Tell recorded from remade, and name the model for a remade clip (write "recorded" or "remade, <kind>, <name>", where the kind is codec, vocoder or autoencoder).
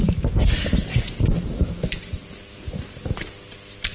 recorded